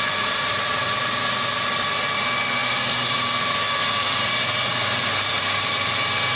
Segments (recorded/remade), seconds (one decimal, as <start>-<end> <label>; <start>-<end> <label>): 0.0-6.4 recorded